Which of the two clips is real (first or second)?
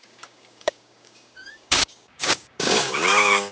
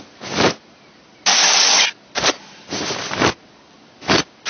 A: second